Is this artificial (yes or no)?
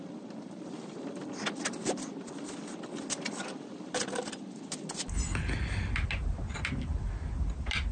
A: no